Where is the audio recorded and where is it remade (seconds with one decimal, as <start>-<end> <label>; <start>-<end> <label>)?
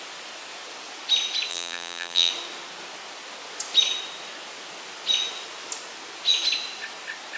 0.0-1.5 recorded; 1.5-2.3 remade; 2.3-7.4 recorded